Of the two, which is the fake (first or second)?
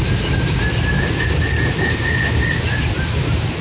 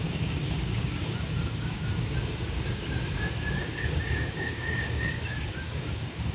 second